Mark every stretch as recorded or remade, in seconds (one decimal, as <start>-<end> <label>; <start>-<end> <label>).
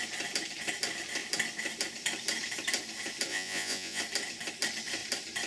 0.0-3.3 recorded; 3.3-4.0 remade; 4.0-5.5 recorded